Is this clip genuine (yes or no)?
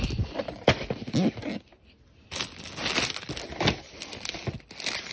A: yes